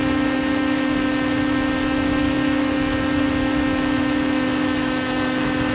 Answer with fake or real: fake